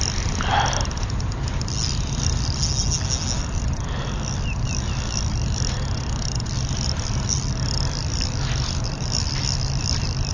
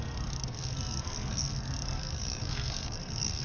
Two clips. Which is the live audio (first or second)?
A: first